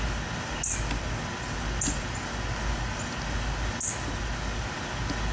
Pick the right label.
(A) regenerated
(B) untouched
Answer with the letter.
B